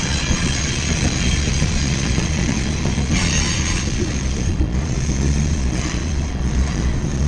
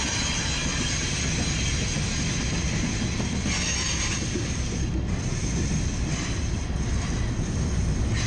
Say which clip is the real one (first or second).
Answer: second